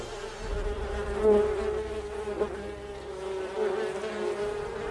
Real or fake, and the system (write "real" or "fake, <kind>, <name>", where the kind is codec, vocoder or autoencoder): real